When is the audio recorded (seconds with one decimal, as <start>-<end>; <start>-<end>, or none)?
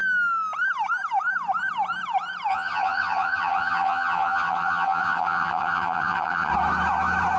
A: 0.0-2.5; 6.5-7.4